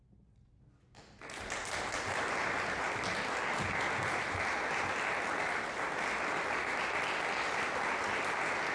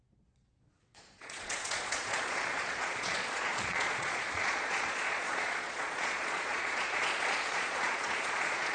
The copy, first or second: second